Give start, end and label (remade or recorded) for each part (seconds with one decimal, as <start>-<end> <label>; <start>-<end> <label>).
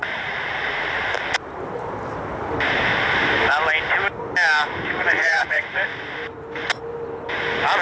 0.0-1.0 remade; 1.0-4.9 recorded; 4.9-5.9 remade; 5.9-7.8 recorded